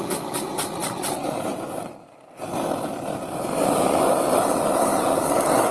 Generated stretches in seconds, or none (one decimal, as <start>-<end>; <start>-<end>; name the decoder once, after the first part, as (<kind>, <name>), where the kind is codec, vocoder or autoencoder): none